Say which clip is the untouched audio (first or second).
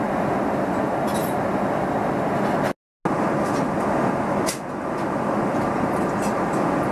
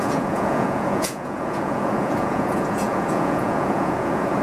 first